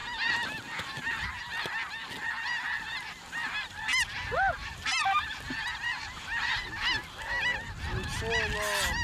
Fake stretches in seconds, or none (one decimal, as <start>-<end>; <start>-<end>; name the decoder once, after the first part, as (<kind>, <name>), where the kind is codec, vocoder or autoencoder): none